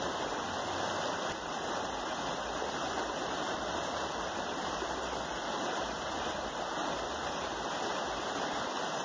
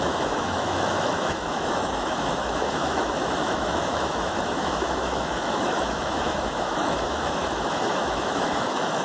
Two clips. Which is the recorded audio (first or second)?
first